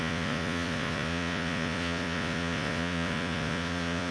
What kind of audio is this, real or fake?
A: fake